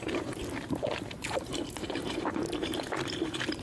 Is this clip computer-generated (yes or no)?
yes